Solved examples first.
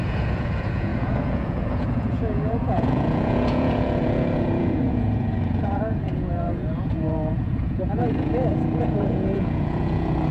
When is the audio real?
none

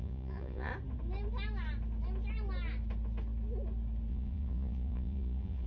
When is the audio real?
0.7-4.1